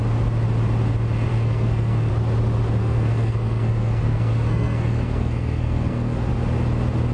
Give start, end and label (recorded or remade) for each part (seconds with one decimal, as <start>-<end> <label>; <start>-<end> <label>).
0.0-1.3 recorded; 1.3-2.1 remade; 2.1-2.8 recorded; 2.8-6.3 remade; 6.3-7.1 recorded